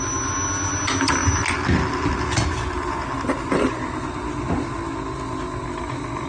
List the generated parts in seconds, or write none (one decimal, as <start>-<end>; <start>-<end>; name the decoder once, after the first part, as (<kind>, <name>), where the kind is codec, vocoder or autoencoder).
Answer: none